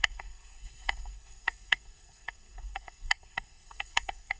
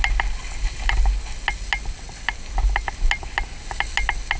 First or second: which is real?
second